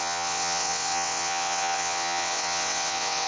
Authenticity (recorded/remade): remade